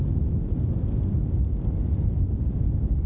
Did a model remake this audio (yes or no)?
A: no